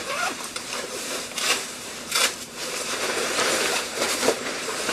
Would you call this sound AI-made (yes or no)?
yes